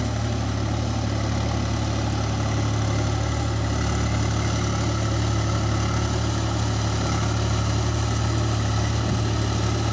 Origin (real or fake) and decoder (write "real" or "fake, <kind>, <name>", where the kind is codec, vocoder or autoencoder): real